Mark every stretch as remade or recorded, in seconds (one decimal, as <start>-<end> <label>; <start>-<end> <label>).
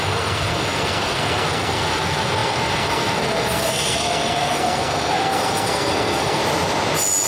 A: 0.0-6.4 remade; 6.4-7.3 recorded